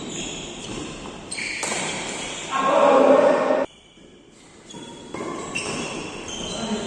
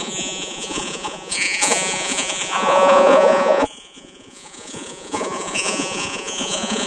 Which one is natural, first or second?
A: first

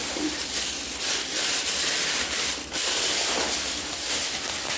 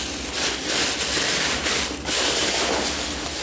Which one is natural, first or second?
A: second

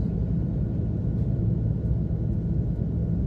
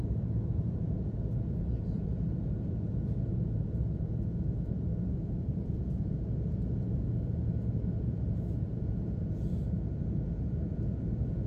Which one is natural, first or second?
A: first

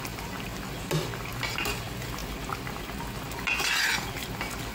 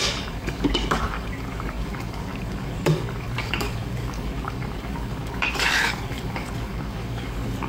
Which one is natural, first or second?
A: first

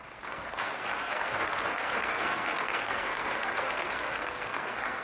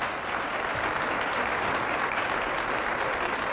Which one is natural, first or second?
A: second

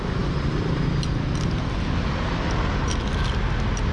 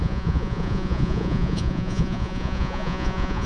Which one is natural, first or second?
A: first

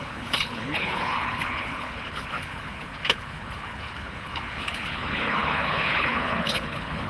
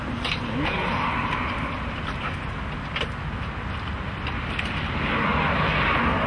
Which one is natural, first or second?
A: second